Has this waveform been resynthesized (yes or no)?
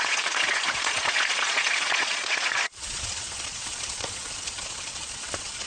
yes